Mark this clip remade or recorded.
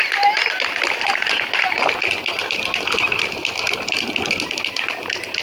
recorded